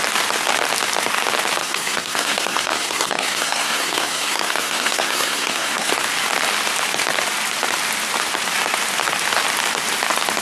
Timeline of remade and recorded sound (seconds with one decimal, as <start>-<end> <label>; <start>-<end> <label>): 0.0-1.6 recorded; 1.6-5.9 remade; 5.9-10.4 recorded